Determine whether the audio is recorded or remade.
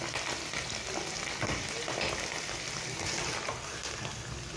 recorded